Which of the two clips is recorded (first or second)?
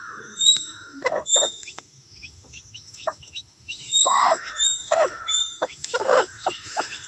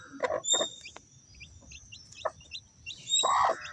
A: second